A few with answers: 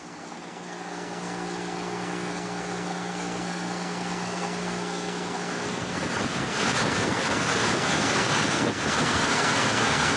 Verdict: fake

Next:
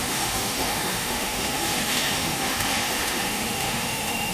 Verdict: fake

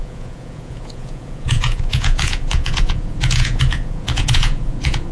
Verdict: fake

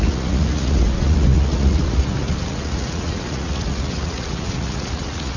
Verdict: fake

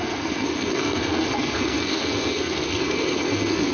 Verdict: fake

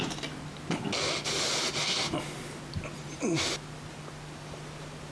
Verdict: real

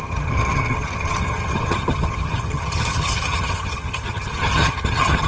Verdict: fake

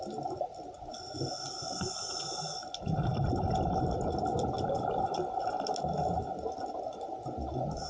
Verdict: real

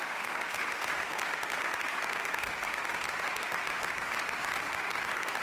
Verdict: fake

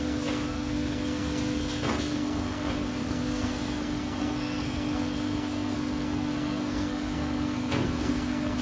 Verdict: fake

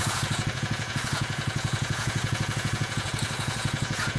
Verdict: fake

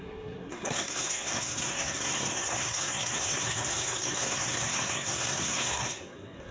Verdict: fake